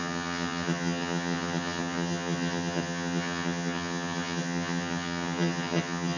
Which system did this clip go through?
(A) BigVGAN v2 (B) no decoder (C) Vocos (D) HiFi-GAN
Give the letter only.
D